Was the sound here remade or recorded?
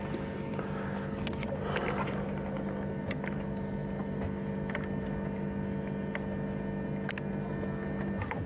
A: recorded